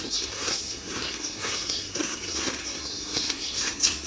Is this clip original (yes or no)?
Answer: no